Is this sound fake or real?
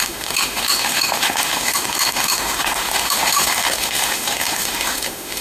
fake